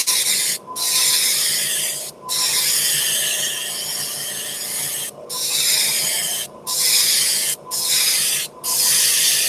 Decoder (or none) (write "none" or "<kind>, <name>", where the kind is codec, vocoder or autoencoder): none